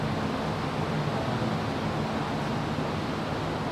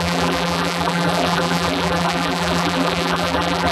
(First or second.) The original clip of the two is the first